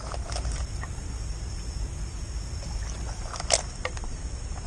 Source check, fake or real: real